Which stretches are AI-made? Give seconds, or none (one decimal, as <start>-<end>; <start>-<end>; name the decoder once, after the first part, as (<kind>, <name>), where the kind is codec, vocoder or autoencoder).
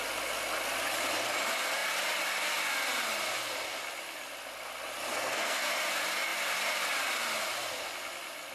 5.1-5.7 (codec, SNAC)